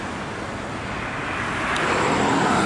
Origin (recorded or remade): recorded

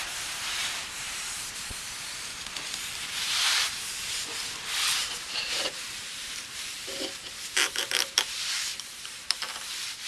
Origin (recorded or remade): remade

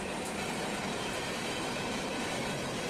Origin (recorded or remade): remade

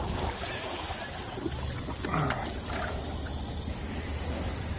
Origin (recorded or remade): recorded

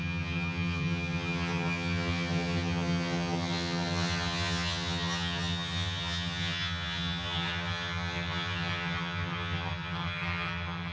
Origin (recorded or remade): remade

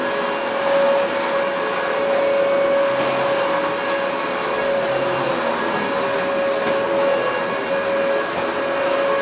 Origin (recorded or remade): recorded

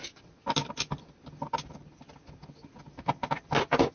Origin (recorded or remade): recorded